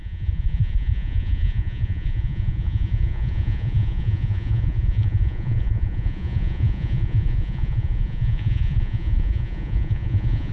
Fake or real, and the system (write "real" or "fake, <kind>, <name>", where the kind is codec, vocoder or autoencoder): fake, vocoder, Vocos